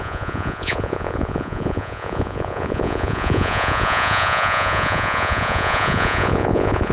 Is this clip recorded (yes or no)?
no